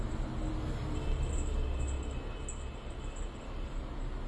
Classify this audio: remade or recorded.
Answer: recorded